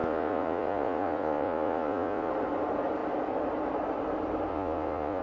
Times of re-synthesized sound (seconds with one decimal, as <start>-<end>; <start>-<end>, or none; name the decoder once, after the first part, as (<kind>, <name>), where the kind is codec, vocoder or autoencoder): 0.0-2.3 (vocoder, Vocos); 4.5-5.2